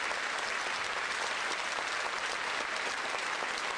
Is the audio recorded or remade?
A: recorded